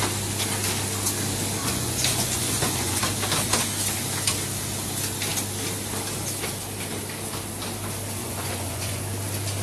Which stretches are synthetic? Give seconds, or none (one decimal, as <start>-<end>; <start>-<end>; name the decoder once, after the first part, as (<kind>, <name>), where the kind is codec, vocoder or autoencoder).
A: 1.6-3.0 (vocoder, Vocos); 8.2-9.0